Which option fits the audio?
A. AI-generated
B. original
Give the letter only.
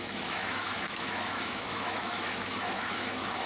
A